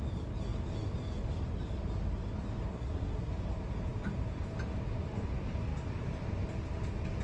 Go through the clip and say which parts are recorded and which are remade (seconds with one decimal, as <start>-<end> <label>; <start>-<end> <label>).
0.0-2.7 recorded; 2.7-3.3 remade; 3.3-7.2 recorded

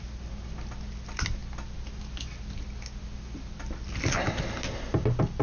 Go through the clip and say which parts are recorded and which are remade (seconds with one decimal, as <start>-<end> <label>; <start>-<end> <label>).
0.0-5.4 recorded

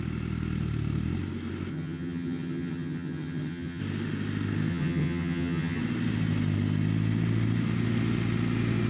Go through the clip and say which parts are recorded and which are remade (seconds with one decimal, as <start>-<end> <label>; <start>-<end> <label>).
0.0-1.7 recorded; 1.7-3.8 remade; 3.8-4.7 recorded; 4.7-5.8 remade; 5.8-8.9 recorded

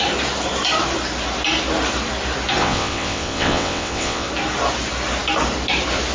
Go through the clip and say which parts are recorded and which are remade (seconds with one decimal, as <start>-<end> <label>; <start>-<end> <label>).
0.0-2.6 recorded; 2.6-4.3 remade; 4.3-6.1 recorded